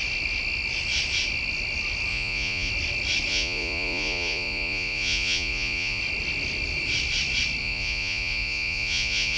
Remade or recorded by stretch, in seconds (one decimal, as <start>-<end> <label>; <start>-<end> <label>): 0.0-2.1 recorded; 2.1-2.7 remade; 2.7-3.3 recorded; 3.3-6.0 remade; 6.0-7.6 recorded; 7.6-9.4 remade